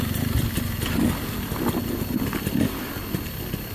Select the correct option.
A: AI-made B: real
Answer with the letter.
A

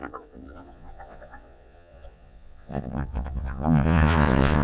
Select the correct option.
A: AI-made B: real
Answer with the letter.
A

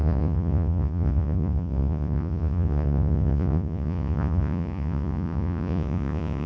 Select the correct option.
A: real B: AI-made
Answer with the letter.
B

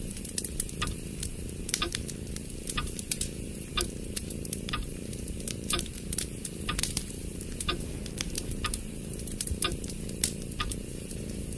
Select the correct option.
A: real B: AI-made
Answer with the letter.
B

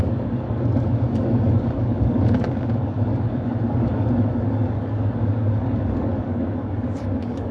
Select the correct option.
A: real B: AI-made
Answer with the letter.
B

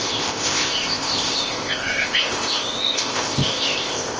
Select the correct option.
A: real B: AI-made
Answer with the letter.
B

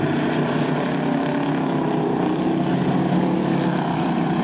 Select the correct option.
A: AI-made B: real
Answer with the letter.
B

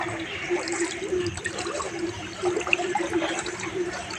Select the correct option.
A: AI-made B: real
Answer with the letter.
A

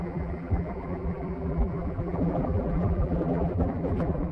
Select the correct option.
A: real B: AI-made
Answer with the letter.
B